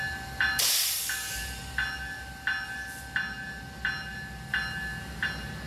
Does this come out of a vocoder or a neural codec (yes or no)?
no